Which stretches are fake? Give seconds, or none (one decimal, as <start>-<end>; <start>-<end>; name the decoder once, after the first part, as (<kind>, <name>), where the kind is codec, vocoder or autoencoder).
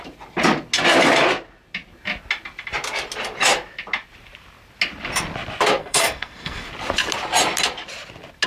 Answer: 5.8-6.7 (codec, SNAC)